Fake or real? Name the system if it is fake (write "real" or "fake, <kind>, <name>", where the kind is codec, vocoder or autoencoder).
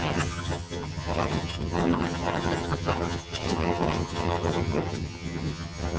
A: fake, vocoder, HiFi-GAN